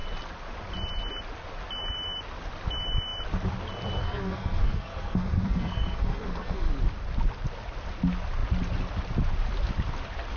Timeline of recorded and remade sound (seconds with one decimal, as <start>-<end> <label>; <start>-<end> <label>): 0.0-4.0 recorded; 4.0-6.7 remade; 6.7-10.4 recorded